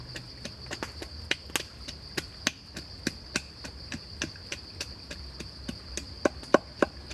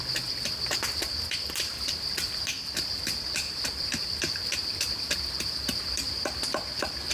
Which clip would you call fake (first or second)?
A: second